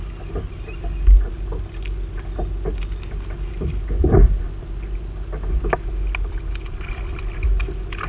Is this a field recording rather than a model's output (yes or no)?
yes